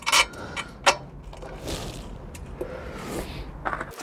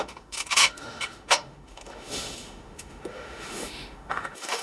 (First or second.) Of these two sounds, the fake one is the second